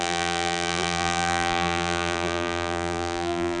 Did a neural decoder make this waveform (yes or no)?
yes